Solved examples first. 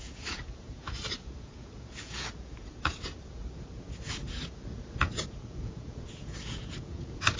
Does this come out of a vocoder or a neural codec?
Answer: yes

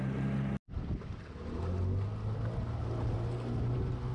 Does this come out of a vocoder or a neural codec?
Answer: no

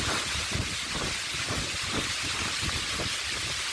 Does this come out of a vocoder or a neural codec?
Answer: no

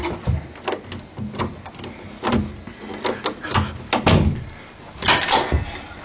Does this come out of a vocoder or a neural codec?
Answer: no